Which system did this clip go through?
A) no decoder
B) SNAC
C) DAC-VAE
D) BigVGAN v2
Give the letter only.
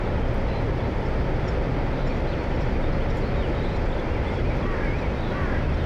A